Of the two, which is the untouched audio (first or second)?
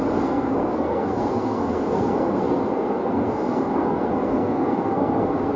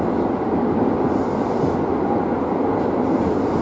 second